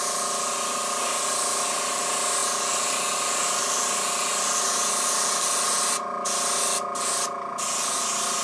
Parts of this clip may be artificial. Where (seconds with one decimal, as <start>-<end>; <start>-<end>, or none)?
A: none